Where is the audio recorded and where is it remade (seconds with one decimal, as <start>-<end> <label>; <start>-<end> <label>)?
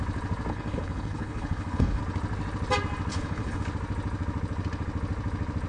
0.0-0.5 recorded; 0.5-2.0 remade; 2.0-3.1 recorded; 3.1-3.6 remade; 3.6-5.7 recorded